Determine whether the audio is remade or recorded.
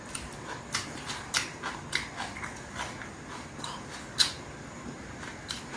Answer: recorded